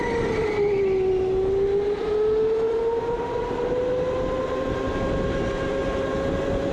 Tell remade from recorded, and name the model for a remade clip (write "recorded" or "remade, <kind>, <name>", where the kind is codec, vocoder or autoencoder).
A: recorded